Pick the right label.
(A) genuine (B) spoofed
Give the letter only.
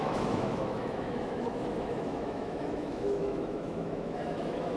B